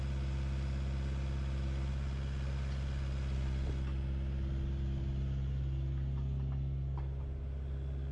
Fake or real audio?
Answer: real